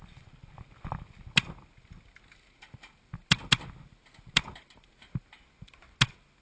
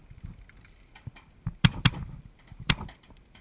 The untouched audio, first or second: first